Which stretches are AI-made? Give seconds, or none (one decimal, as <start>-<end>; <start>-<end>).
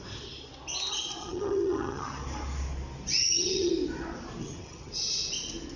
1.2-2.2; 3.2-3.7; 4.4-4.9